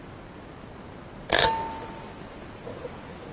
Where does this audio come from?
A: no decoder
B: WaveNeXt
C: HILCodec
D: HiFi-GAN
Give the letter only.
A